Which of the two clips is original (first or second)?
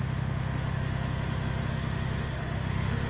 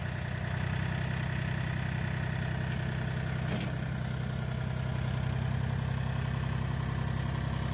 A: second